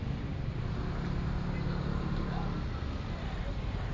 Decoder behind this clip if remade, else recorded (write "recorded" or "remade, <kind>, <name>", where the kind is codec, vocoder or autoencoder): recorded